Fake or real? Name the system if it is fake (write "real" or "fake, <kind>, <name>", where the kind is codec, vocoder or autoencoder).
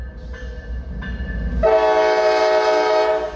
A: real